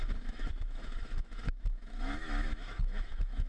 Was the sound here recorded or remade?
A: remade